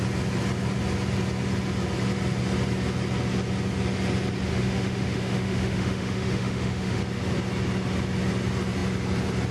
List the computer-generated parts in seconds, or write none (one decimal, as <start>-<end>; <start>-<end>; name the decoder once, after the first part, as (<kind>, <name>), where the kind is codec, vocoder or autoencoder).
4.5-7.0 (autoencoder, DAC-VAE)

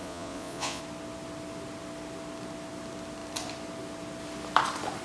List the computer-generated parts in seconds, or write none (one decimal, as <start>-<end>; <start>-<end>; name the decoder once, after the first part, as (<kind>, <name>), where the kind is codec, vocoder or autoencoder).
0.0-0.8 (vocoder, Vocos)

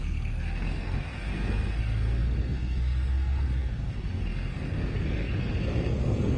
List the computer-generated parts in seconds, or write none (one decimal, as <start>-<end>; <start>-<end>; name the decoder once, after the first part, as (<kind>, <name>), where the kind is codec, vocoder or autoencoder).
0.0-6.4 (codec, SNAC)

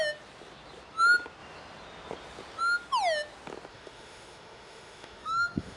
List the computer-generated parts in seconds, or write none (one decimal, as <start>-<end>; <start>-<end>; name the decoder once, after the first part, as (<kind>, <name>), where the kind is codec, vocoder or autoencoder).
3.7-5.8 (autoencoder, DAC-VAE)

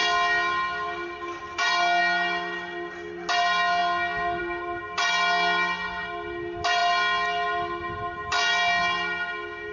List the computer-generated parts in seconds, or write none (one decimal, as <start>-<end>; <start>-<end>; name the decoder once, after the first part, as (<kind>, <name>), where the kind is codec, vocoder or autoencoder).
none